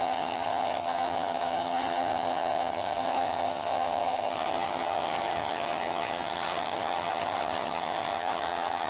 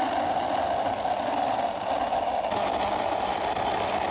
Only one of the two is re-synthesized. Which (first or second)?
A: first